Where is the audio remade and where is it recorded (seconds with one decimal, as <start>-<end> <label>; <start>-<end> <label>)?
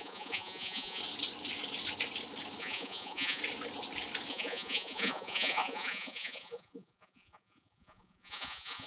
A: 0.0-1.0 remade; 1.0-2.6 recorded; 2.6-3.4 remade; 3.4-4.3 recorded; 4.3-8.9 remade